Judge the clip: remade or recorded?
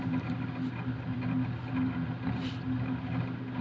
recorded